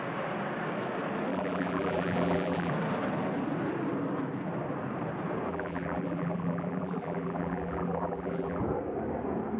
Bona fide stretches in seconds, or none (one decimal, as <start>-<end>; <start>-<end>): 0.0-1.3; 2.7-5.5; 8.6-9.6